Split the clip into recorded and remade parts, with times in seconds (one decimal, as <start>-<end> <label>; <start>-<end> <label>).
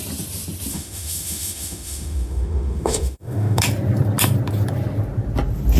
0.0-0.7 recorded; 0.7-3.6 remade; 3.6-5.8 recorded